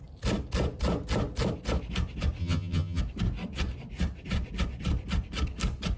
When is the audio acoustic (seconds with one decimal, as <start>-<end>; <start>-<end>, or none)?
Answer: 0.0-2.4; 3.0-6.0